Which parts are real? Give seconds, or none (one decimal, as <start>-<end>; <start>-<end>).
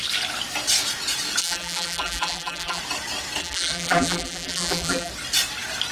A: 0.0-1.4; 2.8-3.4; 5.1-5.9